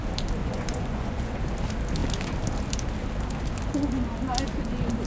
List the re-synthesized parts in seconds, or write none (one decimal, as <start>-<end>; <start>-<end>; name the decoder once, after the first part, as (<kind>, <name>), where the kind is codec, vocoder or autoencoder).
0.4-1.4 (vocoder, Vocos)